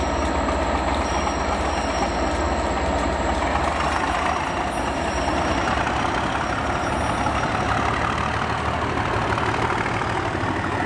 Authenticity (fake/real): real